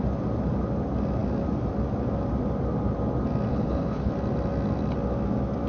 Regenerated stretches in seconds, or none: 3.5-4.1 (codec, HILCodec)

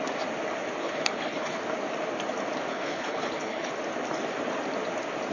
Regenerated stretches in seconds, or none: 0.8-1.6 (codec, HILCodec); 2.7-3.7

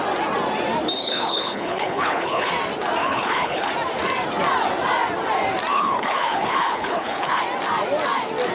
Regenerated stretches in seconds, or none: 1.0-2.5 (codec, HILCodec); 3.0-3.7; 5.7-7.4

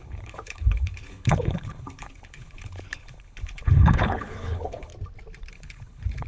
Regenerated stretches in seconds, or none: 0.0-4.9 (codec, HILCodec); 5.5-6.3

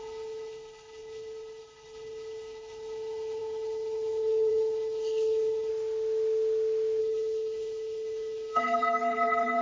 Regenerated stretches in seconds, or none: 0.0-5.7 (codec, HILCodec); 7.0-9.6

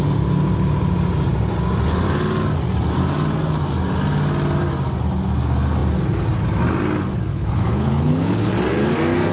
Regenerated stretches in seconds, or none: 7.3-8.5 (codec, HILCodec)